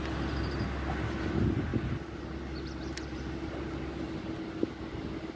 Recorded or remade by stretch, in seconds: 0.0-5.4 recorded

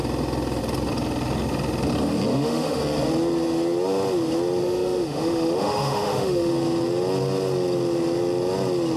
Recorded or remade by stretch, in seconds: 0.0-2.3 recorded; 2.3-2.8 remade; 2.8-4.6 recorded; 4.6-6.5 remade; 6.5-9.0 recorded